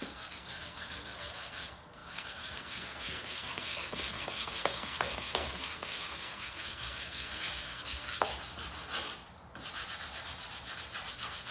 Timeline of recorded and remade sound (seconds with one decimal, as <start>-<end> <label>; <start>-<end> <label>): 0.0-8.3 remade; 8.3-11.1 recorded; 11.1-11.5 remade